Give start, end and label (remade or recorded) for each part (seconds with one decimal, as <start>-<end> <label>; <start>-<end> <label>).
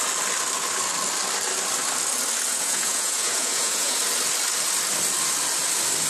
0.0-2.5 recorded; 2.5-4.0 remade; 4.0-6.1 recorded